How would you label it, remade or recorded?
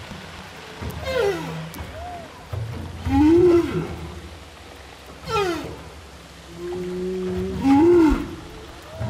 recorded